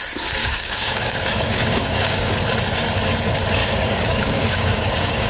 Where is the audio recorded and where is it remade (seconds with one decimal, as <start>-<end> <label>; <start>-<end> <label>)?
0.0-0.4 recorded; 0.4-2.3 remade; 2.3-3.6 recorded; 3.6-5.3 remade

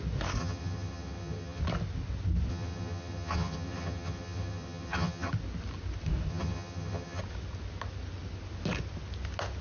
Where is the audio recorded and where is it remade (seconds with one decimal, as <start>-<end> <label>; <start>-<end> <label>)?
0.0-0.4 recorded; 0.4-1.6 remade; 1.6-2.5 recorded; 2.5-5.3 remade; 5.3-6.3 recorded; 6.3-7.2 remade; 7.2-9.6 recorded

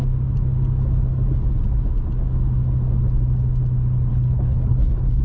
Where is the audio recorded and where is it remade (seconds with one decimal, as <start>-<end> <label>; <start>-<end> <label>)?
0.0-4.1 recorded; 4.1-5.2 remade